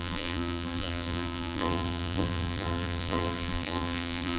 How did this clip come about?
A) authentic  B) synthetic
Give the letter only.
B